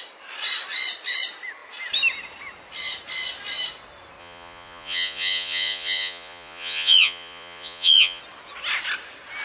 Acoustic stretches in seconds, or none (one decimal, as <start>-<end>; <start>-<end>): 0.0-4.2; 8.2-9.4